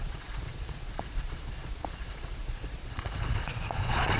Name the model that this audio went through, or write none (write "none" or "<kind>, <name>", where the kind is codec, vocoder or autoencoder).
vocoder, Vocos